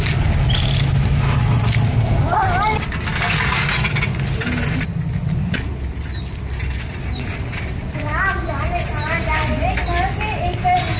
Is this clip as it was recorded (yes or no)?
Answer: yes